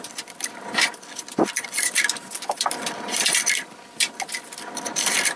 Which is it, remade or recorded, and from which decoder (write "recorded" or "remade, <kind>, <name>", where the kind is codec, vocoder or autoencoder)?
remade, vocoder, BigVGAN v2